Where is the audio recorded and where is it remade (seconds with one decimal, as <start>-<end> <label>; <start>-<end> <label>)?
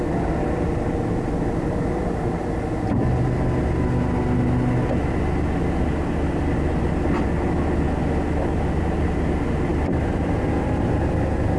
0.0-9.7 recorded; 9.7-11.2 remade; 11.2-11.6 recorded